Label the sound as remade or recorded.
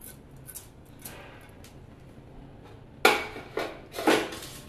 recorded